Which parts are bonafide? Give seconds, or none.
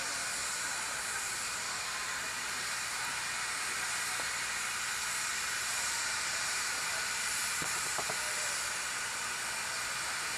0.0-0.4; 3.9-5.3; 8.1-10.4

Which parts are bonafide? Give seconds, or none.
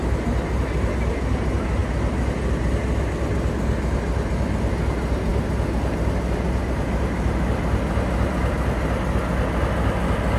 0.0-10.4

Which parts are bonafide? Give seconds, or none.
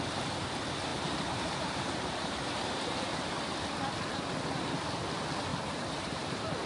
0.0-0.9; 3.3-5.5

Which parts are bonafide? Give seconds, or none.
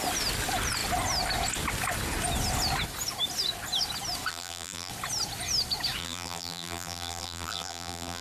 0.0-4.3; 4.9-6.0